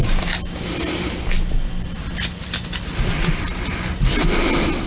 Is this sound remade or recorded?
recorded